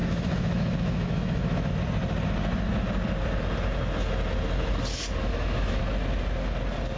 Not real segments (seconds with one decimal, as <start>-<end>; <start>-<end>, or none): 0.0-1.7; 5.2-5.8